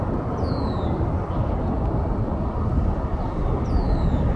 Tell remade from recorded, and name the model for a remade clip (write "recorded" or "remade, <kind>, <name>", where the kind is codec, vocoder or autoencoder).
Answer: recorded